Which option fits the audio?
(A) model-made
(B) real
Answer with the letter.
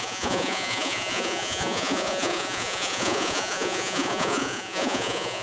A